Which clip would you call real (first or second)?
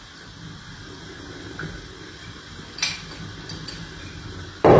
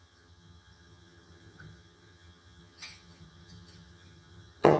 first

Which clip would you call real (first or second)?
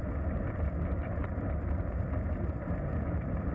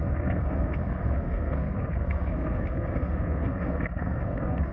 first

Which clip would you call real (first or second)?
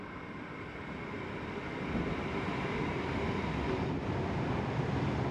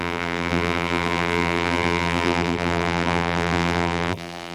first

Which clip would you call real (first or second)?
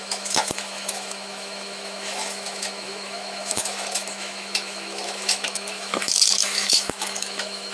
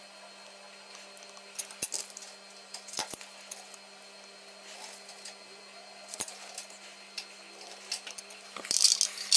second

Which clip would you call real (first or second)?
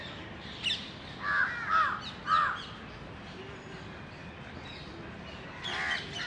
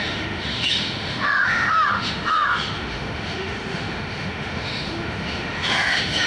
first